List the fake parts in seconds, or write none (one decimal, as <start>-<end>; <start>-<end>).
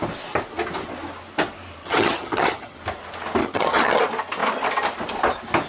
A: 1.8-2.8; 3.4-4.0